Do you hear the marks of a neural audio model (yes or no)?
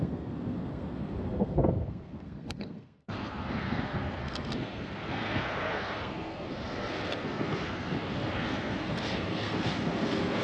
yes